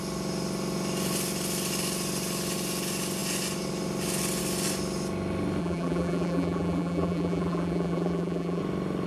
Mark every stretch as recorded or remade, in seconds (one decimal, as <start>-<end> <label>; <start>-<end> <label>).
0.0-5.6 recorded; 5.6-8.6 remade; 8.6-9.1 recorded